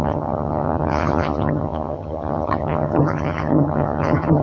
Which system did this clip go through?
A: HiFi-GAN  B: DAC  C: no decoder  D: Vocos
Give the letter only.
A